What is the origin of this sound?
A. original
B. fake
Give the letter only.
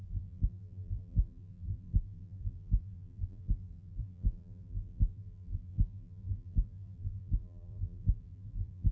B